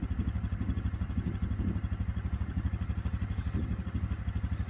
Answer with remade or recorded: recorded